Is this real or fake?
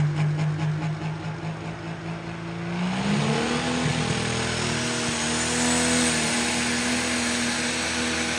real